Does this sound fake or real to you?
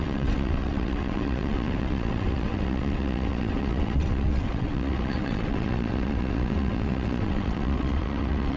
fake